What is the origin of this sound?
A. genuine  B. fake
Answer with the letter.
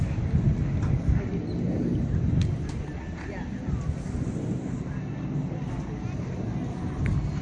A